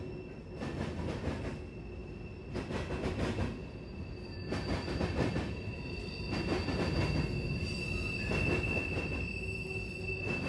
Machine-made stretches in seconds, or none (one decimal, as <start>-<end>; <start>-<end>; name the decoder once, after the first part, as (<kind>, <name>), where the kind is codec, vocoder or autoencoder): 2.0-6.1 (vocoder, BigVGAN v2)